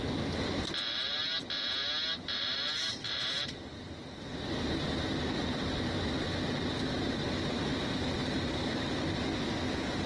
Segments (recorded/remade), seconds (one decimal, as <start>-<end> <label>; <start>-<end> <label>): 0.0-0.9 recorded; 0.9-1.4 remade; 1.4-1.8 recorded; 1.8-3.6 remade; 3.6-7.7 recorded; 7.7-9.2 remade; 9.2-10.1 recorded